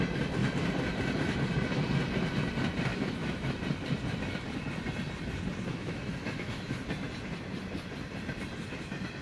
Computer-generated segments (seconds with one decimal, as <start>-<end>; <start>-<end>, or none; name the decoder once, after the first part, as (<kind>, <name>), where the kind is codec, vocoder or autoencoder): 2.9-3.5 (autoencoder, DAC-VAE); 5.7-6.8